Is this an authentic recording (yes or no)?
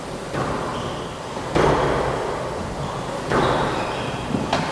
yes